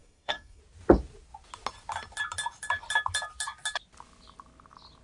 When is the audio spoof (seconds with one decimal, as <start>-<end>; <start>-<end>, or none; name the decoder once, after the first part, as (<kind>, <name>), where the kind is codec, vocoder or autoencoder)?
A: 0.0-0.6 (codec, SNAC)